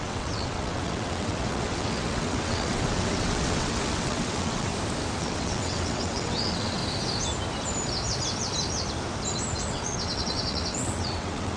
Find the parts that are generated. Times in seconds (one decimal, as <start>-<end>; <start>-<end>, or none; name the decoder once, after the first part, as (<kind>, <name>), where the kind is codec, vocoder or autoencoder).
0.0-4.7 (vocoder, WaveNeXt); 5.2-6.8; 9.7-11.6